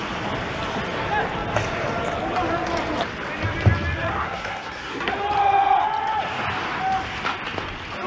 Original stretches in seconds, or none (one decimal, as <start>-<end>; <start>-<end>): 0.0-4.1; 5.1-8.1